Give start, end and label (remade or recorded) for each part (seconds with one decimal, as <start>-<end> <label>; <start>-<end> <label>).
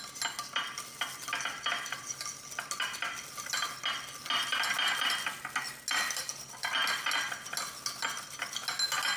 0.0-9.2 recorded